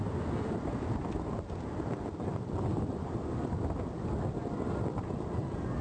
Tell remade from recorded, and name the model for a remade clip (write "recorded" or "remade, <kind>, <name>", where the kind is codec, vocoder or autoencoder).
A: recorded